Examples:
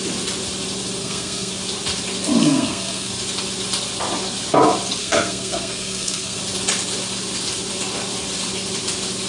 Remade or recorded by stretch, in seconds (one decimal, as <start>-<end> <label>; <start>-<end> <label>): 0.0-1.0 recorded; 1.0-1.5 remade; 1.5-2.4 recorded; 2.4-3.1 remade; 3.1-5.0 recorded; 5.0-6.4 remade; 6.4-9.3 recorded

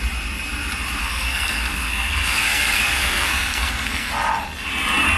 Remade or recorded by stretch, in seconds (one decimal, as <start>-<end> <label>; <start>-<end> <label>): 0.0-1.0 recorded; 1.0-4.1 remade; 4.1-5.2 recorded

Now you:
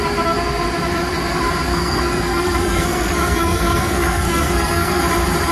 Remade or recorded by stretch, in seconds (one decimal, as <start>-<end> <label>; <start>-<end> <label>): 0.0-1.7 recorded; 1.7-5.0 remade; 5.0-5.5 recorded